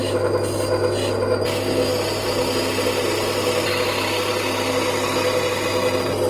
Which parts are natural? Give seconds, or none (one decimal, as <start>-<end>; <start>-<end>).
0.0-6.3